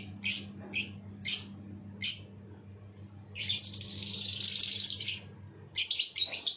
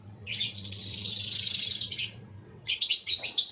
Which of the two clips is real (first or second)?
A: first